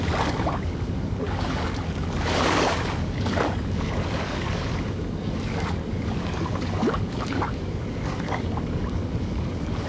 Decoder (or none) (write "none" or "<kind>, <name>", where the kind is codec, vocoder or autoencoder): codec, DAC